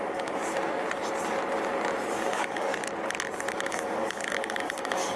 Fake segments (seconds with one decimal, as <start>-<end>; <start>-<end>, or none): 0.0-0.4; 2.1-2.7; 3.5-5.2